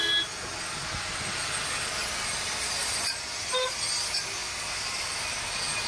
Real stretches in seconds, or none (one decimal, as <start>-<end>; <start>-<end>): 0.0-5.9